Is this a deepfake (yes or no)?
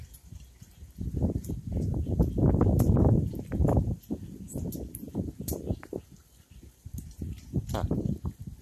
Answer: no